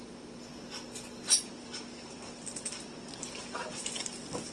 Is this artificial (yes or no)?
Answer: no